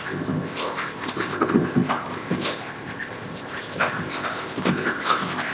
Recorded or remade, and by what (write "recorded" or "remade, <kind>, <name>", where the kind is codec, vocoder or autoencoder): remade, codec, ZipCodec